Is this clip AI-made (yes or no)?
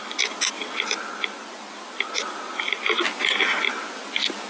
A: no